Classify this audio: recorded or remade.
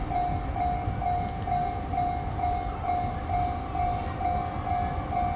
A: recorded